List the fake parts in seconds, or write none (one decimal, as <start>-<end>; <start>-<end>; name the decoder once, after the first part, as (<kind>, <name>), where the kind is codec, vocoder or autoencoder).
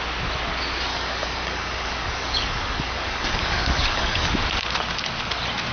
0.9-4.3 (codec, DAC)